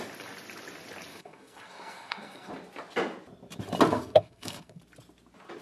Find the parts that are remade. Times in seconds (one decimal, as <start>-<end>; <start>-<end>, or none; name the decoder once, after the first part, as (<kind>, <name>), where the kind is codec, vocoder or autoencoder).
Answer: 1.1-2.5 (codec, SNAC); 3.9-4.8